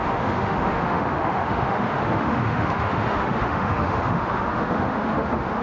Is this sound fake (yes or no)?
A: yes